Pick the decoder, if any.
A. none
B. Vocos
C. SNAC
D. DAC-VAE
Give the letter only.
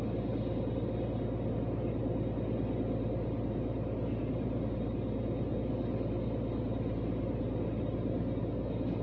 A